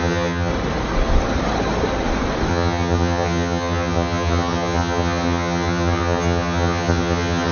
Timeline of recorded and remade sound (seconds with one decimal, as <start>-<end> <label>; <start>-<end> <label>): 0.0-0.5 remade; 0.5-2.5 recorded; 2.5-7.5 remade